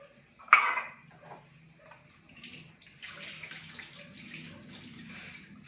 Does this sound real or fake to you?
real